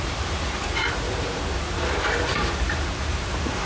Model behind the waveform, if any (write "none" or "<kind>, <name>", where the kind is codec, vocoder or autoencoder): vocoder, BigVGAN v2